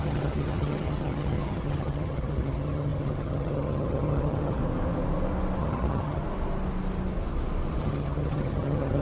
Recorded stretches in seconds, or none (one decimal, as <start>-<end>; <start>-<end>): 4.6-5.6; 6.2-7.8